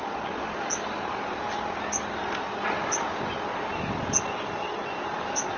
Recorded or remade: recorded